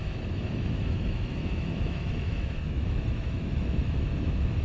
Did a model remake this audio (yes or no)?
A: yes